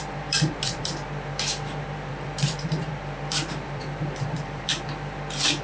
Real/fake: fake